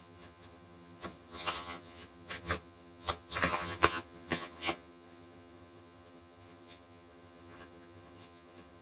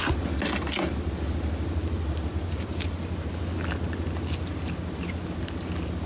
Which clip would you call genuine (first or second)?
second